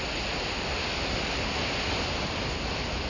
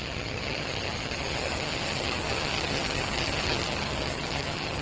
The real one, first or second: first